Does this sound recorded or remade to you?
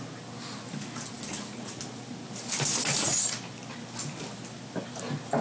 recorded